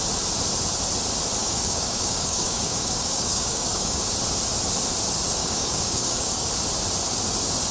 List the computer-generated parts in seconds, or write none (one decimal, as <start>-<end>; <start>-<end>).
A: 1.4-4.0; 5.4-6.5